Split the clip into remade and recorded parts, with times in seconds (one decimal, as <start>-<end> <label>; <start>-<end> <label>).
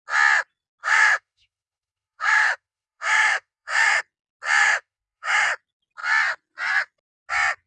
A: 0.0-0.8 recorded; 0.8-4.0 remade; 4.0-4.6 recorded; 4.6-5.5 remade; 5.5-7.7 recorded